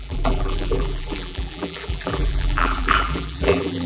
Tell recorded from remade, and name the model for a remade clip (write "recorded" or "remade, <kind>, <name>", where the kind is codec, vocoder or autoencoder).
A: remade, vocoder, BigVGAN v2